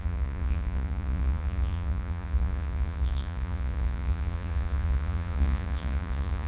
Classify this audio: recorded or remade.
remade